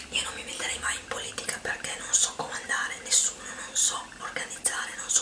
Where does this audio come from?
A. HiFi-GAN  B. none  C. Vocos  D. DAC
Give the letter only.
B